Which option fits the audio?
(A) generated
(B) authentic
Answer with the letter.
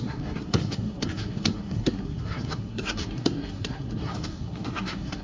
A